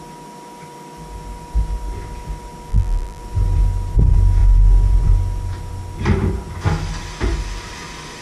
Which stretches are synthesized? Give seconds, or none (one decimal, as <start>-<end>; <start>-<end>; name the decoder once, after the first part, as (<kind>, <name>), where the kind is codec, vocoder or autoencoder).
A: 2.7-3.2 (vocoder, BigVGAN v2)